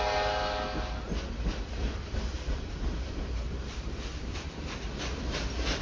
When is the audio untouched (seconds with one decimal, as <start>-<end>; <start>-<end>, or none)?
0.0-1.8; 4.9-5.8